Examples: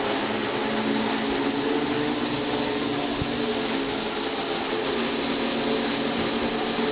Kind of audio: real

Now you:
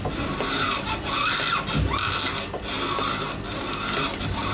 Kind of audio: real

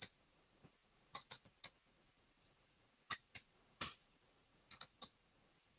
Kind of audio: fake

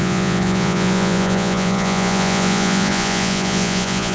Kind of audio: fake